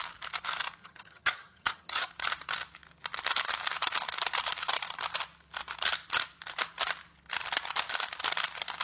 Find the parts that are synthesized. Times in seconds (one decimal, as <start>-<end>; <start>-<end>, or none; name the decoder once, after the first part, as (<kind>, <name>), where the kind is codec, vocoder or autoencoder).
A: 0.8-2.1 (vocoder, HiFi-GAN)